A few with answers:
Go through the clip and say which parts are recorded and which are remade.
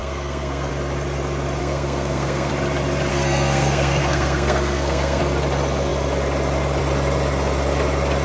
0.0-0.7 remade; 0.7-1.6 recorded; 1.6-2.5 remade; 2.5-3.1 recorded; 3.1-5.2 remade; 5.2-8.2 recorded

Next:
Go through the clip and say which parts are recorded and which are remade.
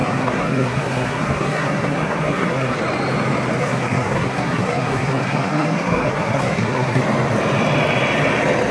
0.0-2.8 remade; 2.8-3.6 recorded; 3.6-7.0 remade; 7.0-8.7 recorded